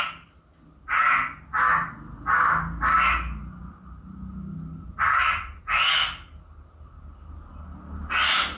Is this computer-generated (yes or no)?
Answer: no